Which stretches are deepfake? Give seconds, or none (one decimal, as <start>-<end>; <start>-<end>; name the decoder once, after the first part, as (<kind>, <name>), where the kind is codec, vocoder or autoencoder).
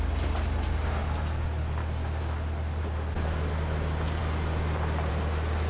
none